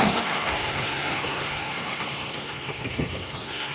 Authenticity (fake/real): fake